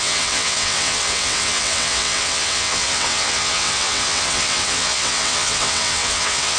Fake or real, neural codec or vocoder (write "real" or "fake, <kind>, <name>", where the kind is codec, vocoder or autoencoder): fake, vocoder, WaveNeXt